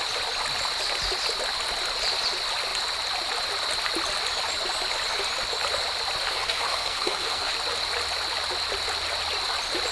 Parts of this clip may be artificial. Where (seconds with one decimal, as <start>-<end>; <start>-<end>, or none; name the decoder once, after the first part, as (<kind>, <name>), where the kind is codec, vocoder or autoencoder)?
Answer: 6.3-7.5 (codec, SNAC)